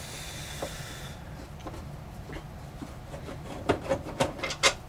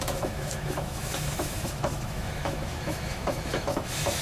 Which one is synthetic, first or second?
second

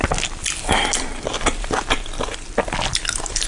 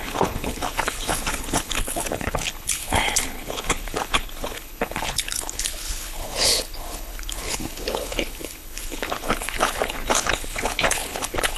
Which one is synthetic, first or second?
second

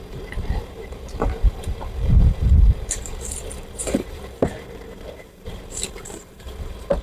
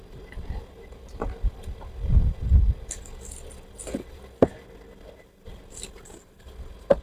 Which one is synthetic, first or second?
first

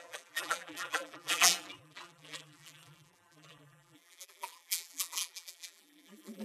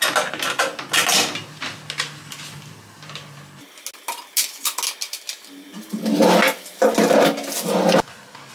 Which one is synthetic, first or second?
first